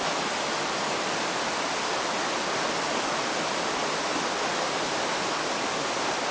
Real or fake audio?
real